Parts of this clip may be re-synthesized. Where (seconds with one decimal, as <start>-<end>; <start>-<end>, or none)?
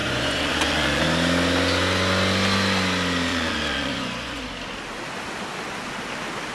0.0-1.0; 3.3-4.4